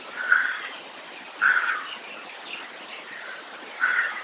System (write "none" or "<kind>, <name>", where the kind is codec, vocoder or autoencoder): none